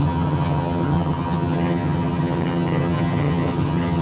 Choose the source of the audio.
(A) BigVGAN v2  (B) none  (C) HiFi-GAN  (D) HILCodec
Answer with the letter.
C